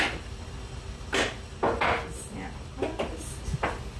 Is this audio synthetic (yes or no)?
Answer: no